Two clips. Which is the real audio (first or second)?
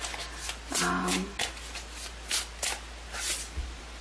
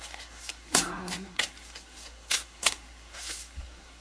first